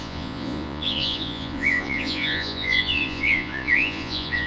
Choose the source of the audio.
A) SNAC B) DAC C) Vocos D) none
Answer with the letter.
C